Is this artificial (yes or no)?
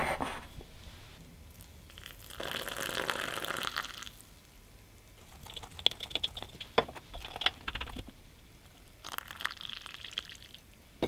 no